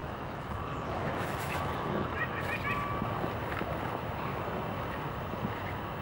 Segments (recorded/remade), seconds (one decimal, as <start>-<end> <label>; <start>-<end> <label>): 0.0-2.5 remade; 2.5-6.0 recorded